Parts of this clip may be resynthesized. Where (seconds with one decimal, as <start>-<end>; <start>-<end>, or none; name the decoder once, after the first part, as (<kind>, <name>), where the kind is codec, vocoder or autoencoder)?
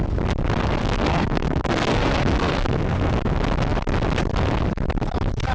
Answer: 0.8-3.1 (codec, SNAC)